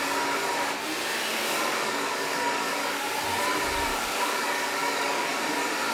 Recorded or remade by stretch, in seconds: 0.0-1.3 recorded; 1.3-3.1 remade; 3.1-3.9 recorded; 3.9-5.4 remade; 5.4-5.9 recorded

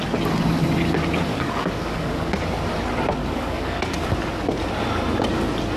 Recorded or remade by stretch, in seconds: 0.0-1.3 recorded; 1.3-2.3 remade; 2.3-3.2 recorded; 3.2-4.1 remade; 4.1-5.8 recorded

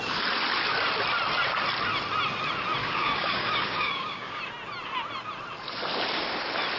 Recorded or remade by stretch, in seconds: 0.0-2.8 recorded; 2.8-4.4 remade; 4.4-6.8 recorded

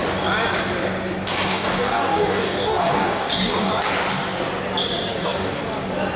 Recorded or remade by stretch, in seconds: 0.0-1.5 recorded; 1.5-3.7 remade; 3.7-5.1 recorded; 5.1-5.6 remade; 5.6-6.2 recorded

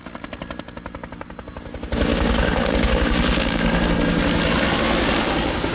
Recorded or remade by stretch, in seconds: 0.0-2.1 recorded; 2.1-3.9 remade; 3.9-5.7 recorded

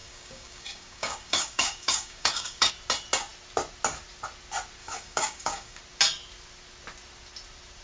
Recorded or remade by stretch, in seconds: 0.0-2.7 remade; 2.7-4.8 recorded; 4.8-5.8 remade; 5.8-7.8 recorded